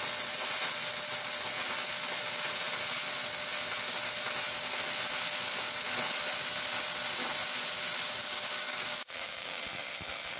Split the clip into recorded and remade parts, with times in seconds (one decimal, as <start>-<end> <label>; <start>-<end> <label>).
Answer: 0.0-8.2 recorded; 8.2-9.6 remade; 9.6-10.4 recorded

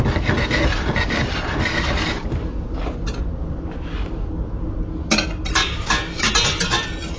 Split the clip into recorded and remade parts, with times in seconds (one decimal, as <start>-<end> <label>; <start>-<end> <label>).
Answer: 0.0-5.6 recorded; 5.6-6.3 remade; 6.3-7.2 recorded

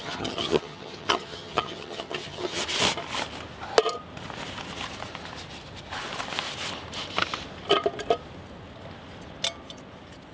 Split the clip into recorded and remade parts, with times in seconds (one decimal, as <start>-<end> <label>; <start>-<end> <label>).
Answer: 0.0-2.6 remade; 2.6-10.3 recorded

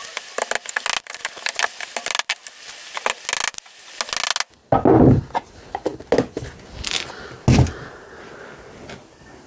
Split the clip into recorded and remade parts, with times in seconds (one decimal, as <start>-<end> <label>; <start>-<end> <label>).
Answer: 0.0-9.5 recorded

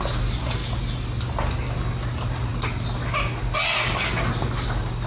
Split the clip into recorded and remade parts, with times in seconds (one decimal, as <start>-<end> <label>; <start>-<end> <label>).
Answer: 0.0-5.1 recorded